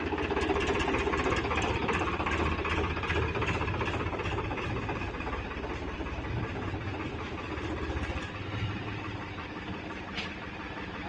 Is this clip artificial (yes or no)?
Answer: yes